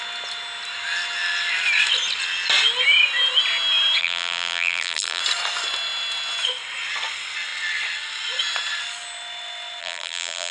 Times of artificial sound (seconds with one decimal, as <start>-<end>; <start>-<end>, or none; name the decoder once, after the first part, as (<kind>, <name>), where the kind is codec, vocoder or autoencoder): 4.0-5.2 (vocoder, BigVGAN v2); 9.8-10.5